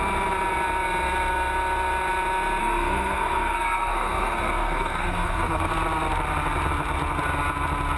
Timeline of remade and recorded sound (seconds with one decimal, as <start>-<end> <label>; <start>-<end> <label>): 0.0-2.6 recorded; 2.6-5.7 remade; 5.7-8.0 recorded